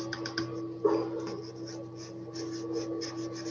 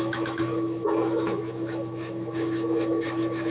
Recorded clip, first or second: first